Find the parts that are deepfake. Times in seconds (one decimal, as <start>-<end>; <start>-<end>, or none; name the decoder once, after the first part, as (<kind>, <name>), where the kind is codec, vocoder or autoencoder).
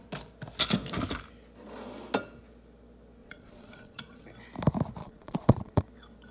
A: 3.2-4.2 (vocoder, Vocos); 5.0-5.8